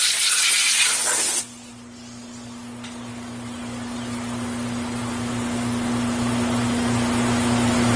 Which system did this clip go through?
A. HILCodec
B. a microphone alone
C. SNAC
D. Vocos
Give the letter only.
B